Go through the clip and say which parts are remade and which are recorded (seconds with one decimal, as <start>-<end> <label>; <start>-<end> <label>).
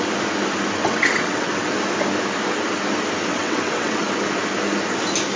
0.0-0.8 recorded; 0.8-1.7 remade; 1.7-3.3 recorded; 3.3-4.1 remade; 4.1-5.4 recorded